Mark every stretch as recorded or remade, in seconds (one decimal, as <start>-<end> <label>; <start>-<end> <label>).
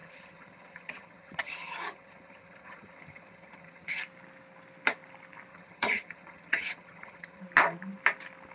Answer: 0.0-4.0 remade; 4.0-5.5 recorded; 5.5-7.4 remade; 7.4-8.5 recorded